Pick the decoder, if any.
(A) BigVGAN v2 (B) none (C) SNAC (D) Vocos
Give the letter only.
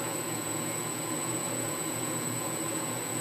D